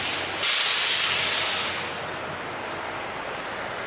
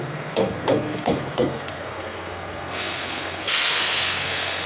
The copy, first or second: second